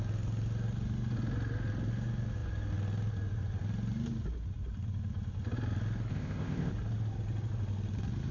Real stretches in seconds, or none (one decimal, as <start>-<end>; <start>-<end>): 0.0-6.1; 6.7-8.3